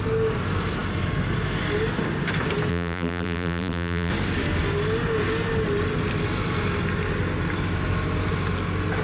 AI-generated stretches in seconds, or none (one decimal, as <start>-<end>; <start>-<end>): 2.7-4.1